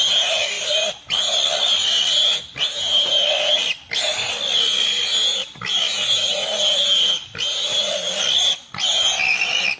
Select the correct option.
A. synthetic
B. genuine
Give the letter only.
B